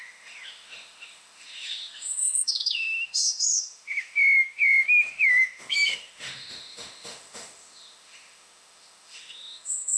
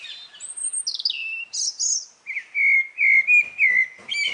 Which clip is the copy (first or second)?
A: first